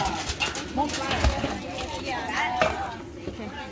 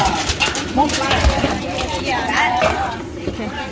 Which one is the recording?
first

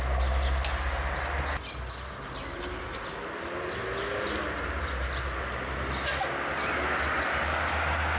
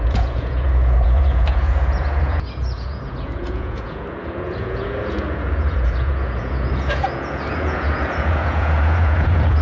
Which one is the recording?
first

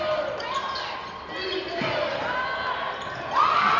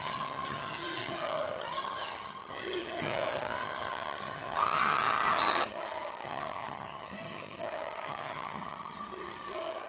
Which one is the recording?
first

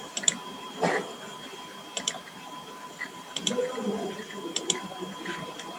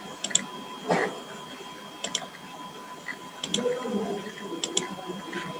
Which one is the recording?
second